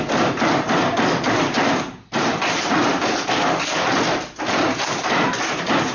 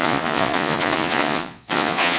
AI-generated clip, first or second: second